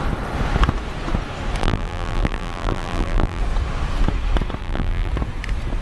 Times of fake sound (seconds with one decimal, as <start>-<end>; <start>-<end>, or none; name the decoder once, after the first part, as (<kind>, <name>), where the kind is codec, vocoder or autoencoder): 1.6-3.4 (vocoder, BigVGAN v2); 4.6-5.1